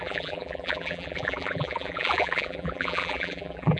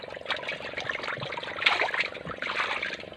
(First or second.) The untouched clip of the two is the second